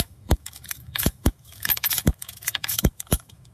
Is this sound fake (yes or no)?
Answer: yes